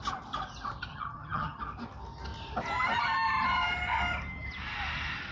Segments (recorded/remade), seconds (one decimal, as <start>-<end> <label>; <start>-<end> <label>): 0.0-0.9 recorded; 0.9-1.6 remade; 1.6-5.3 recorded